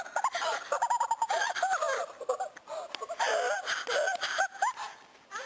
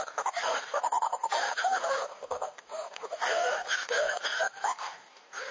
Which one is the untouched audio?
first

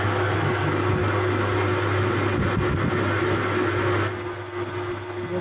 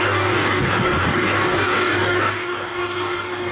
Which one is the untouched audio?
first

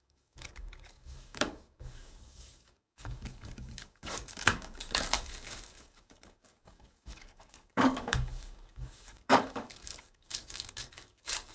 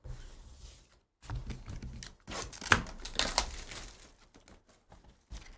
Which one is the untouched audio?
second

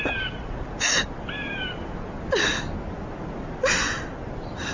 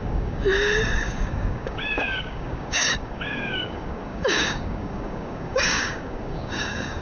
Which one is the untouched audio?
first